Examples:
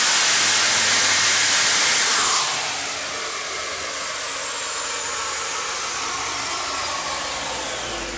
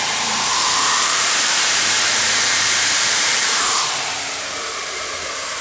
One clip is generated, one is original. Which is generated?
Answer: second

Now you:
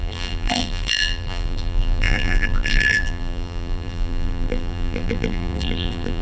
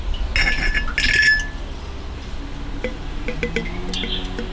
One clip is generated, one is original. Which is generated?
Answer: first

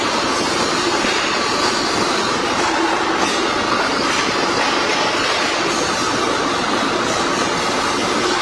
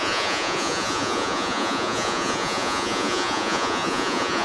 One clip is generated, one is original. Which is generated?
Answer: second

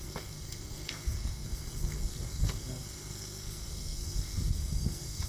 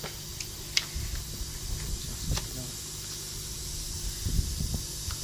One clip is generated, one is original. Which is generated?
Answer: first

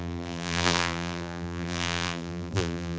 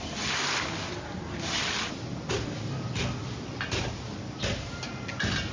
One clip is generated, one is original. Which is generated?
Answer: first